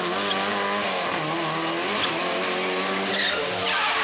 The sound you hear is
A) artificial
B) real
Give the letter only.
B